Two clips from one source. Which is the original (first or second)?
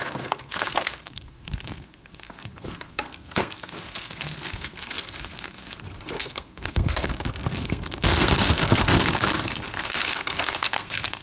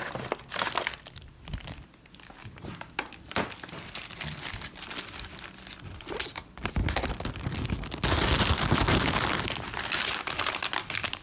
second